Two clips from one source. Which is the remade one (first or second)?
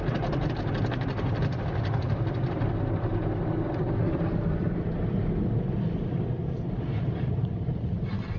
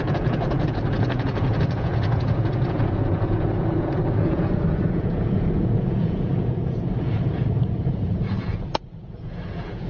second